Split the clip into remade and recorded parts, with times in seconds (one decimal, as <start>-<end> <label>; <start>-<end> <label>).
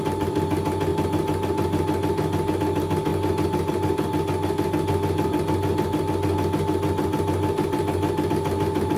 0.0-9.0 recorded